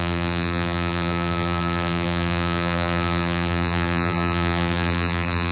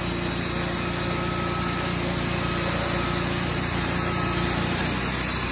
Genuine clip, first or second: second